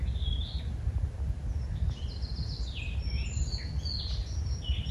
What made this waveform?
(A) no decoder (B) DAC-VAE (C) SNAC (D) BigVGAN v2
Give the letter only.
A